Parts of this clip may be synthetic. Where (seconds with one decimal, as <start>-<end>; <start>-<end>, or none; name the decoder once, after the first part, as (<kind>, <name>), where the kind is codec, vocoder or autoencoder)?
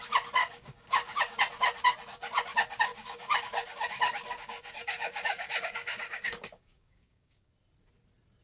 0.4-1.4 (codec, DAC); 2.9-7.5